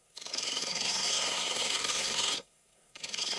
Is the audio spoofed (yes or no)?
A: yes